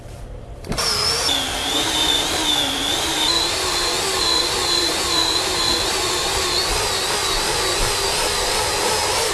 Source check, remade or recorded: remade